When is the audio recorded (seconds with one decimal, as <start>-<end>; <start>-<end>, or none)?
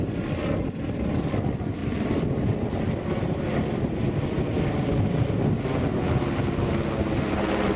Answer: 0.0-7.8